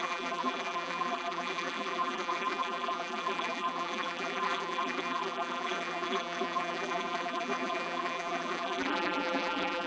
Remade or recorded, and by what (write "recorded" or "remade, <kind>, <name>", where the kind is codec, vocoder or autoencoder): remade, vocoder, BigVGAN v2